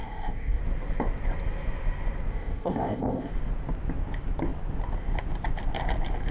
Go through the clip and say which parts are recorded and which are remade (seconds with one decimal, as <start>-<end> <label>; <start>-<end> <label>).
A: 0.0-0.6 remade; 0.6-2.3 recorded; 2.3-3.3 remade; 3.3-6.3 recorded